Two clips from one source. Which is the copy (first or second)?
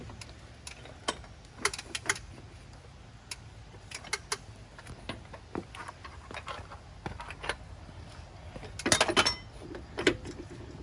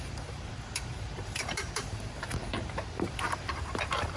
second